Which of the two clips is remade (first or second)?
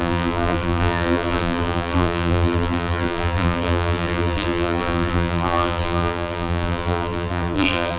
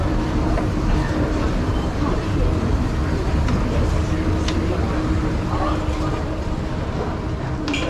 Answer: first